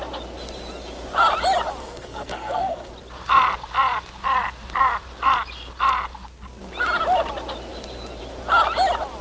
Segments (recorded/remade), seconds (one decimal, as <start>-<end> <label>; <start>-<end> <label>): 0.0-1.8 recorded; 1.8-2.9 remade; 2.9-9.2 recorded